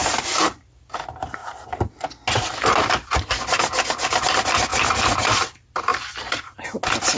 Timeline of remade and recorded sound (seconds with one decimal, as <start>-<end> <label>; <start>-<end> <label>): 0.0-1.4 recorded; 1.4-1.9 remade; 1.9-5.9 recorded; 5.9-6.6 remade; 6.6-7.2 recorded